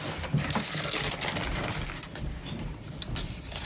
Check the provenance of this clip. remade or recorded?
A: recorded